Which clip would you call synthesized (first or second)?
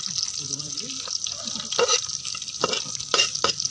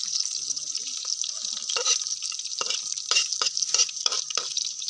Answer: second